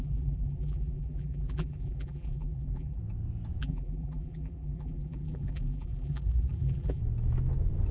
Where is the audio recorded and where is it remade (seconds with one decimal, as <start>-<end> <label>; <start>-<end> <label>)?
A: 0.0-3.0 remade; 3.0-3.6 recorded; 3.6-7.0 remade; 7.0-7.9 recorded

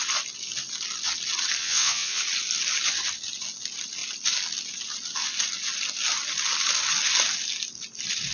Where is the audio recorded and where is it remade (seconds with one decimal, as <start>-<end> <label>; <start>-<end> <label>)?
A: 0.0-1.6 recorded; 1.6-2.2 remade; 2.2-8.3 recorded

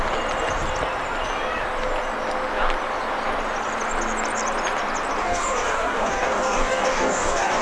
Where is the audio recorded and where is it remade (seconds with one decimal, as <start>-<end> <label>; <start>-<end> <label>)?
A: 0.0-5.2 recorded; 5.2-7.6 remade

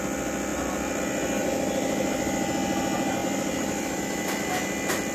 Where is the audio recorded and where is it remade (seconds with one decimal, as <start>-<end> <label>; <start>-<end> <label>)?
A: 0.0-0.5 recorded; 0.5-1.0 remade; 1.0-1.4 recorded; 1.4-2.5 remade; 2.5-3.2 recorded; 3.2-4.0 remade; 4.0-5.1 recorded